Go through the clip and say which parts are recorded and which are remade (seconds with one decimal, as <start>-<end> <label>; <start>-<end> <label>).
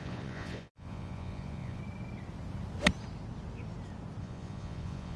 0.0-1.8 remade; 1.8-4.2 recorded; 4.2-5.2 remade